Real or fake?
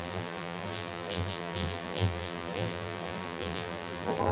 fake